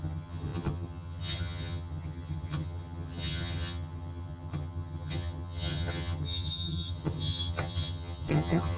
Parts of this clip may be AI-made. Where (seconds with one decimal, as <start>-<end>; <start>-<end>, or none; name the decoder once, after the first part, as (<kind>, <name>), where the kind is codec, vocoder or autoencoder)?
0.0-8.8 (vocoder, HiFi-GAN)